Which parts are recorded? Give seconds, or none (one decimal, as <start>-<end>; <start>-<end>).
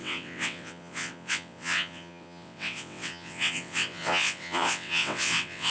none